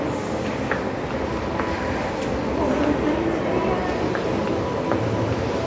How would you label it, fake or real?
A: real